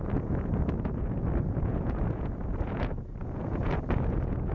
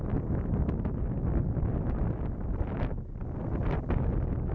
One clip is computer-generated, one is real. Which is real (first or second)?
second